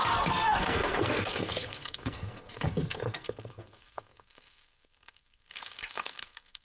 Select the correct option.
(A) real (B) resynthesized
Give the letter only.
B